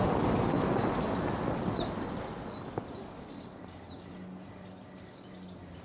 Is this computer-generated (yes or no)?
no